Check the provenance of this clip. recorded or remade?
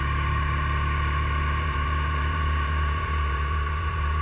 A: remade